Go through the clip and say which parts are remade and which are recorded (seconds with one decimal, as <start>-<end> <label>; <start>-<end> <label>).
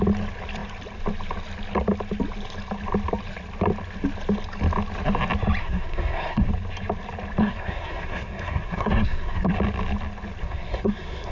0.0-5.6 recorded; 5.6-6.5 remade; 6.5-7.4 recorded; 7.4-9.5 remade; 9.5-10.4 recorded; 10.4-11.3 remade